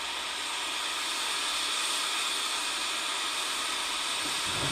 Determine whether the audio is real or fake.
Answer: real